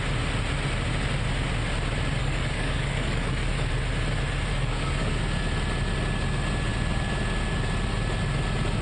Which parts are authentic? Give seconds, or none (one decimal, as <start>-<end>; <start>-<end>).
0.0-2.2; 3.7-4.5; 5.1-8.8